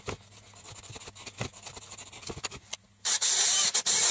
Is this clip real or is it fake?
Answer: real